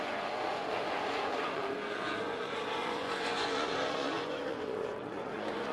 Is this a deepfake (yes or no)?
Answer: yes